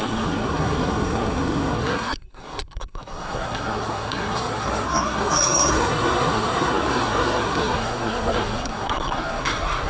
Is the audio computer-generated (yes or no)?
yes